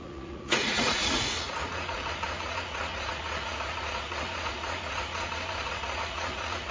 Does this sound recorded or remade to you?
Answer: remade